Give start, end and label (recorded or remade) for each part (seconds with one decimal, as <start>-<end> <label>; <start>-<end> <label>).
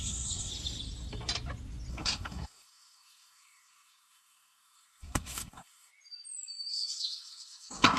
0.0-0.5 remade; 0.5-1.9 recorded; 1.9-5.9 remade; 5.9-6.7 recorded; 6.7-8.0 remade